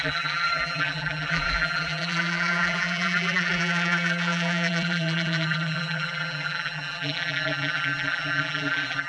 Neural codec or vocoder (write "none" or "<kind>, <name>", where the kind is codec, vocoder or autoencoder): vocoder, BigVGAN v2